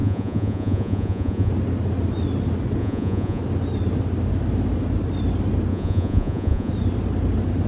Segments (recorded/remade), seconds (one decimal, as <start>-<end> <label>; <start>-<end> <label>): 0.0-1.5 remade; 1.5-2.8 recorded; 2.8-3.4 remade; 3.4-5.7 recorded; 5.7-6.7 remade; 6.7-7.7 recorded